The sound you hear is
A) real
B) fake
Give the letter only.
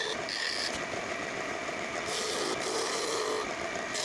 A